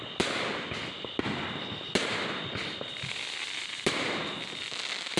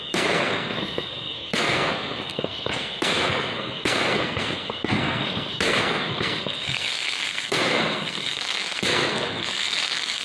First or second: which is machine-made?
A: second